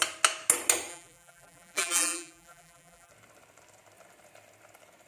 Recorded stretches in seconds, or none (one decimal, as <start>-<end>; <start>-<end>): 0.0-0.9; 3.1-5.1